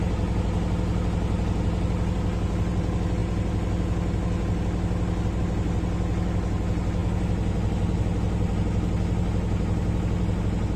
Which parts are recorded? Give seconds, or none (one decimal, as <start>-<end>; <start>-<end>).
0.0-10.8